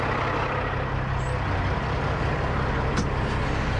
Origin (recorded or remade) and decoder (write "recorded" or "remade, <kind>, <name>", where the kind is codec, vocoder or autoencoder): recorded